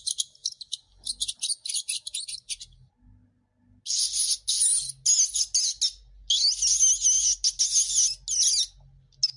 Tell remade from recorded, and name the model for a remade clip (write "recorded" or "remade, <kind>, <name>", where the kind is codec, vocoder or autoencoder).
recorded